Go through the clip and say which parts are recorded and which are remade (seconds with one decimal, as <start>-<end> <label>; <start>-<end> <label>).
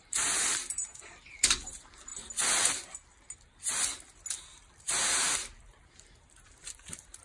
0.0-2.1 remade; 2.1-5.8 recorded; 5.8-7.2 remade